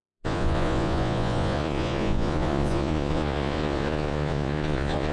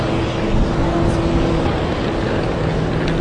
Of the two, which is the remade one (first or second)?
first